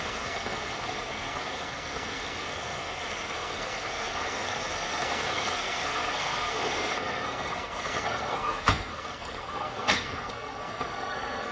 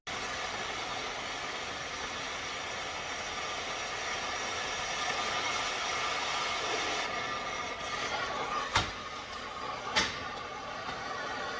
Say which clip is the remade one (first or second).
first